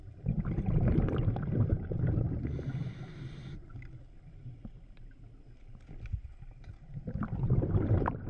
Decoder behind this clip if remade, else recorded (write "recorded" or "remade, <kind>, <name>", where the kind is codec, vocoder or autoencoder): recorded